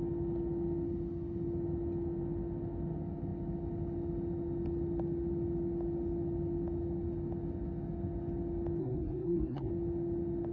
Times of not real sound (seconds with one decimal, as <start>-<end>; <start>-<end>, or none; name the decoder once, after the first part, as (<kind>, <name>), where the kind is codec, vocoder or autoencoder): 8.8-9.7 (codec, SNAC)